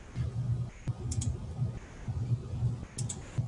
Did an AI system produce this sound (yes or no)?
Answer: no